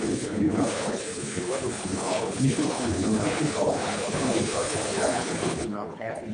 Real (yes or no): no